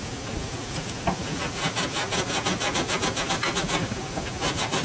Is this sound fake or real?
real